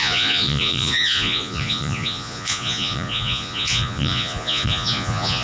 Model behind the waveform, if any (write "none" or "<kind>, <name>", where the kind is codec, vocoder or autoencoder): vocoder, Vocos